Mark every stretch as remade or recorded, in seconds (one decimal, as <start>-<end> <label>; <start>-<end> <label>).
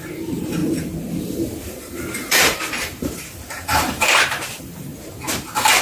0.0-0.6 remade; 0.6-1.2 recorded; 1.2-4.9 remade; 4.9-5.8 recorded